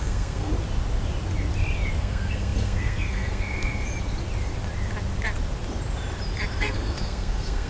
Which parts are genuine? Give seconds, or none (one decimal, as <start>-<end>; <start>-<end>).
0.5-2.0; 3.9-6.6

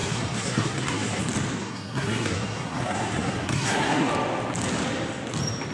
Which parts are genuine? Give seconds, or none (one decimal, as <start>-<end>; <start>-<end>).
1.2-1.6; 4.1-5.7

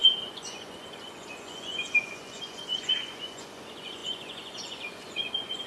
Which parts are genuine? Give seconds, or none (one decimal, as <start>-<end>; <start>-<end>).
none

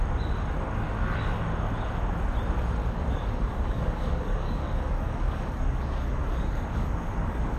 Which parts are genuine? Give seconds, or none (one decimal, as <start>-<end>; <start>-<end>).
0.0-2.8

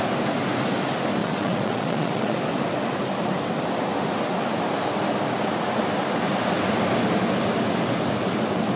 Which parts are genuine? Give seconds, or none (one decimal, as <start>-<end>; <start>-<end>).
0.0-1.2; 2.4-8.8